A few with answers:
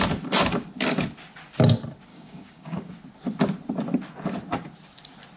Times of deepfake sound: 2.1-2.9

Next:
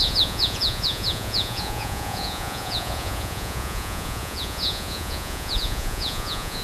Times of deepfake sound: 0.0-6.6